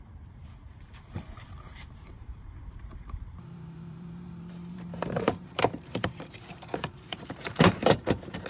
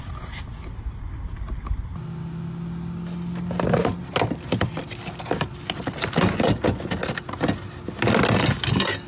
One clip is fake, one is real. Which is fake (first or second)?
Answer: first